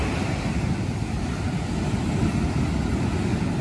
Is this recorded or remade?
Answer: recorded